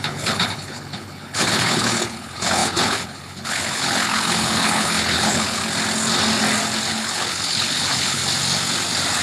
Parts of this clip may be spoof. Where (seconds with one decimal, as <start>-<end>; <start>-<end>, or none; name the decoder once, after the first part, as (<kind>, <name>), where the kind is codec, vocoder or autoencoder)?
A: 0.0-5.6 (codec, HILCodec); 6.9-8.2